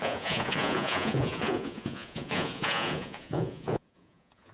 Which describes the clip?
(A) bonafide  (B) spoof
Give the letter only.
B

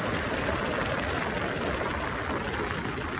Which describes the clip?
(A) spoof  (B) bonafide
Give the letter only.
B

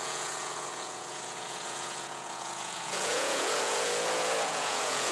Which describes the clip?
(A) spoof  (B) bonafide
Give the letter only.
A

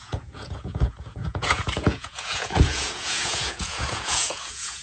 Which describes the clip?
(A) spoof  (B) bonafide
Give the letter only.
A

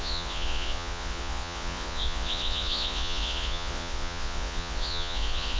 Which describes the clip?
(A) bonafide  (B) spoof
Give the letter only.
B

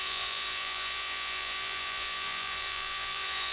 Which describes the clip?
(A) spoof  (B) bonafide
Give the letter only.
A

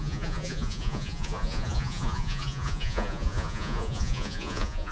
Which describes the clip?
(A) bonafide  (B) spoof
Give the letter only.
B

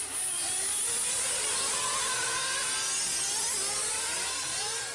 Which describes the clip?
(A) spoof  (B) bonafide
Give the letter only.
B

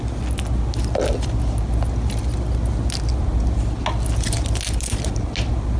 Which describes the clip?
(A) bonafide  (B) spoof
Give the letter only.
A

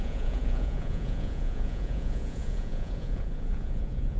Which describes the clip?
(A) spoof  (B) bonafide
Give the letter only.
A